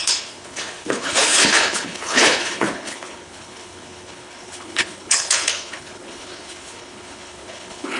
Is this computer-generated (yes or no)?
yes